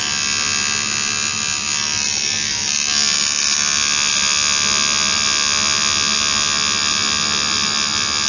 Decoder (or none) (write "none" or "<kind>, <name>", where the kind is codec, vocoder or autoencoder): none